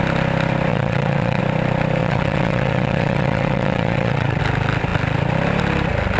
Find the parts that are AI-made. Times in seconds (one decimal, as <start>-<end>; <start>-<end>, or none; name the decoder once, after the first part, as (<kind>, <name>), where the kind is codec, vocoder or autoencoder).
0.7-1.4 (vocoder, WaveNeXt); 2.0-4.4